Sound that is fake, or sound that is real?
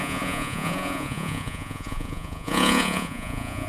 fake